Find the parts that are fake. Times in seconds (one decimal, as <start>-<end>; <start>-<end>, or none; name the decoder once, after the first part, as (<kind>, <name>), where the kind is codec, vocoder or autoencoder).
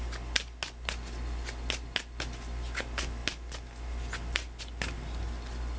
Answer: none